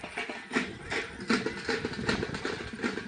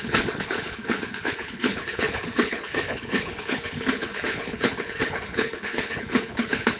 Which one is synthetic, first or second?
second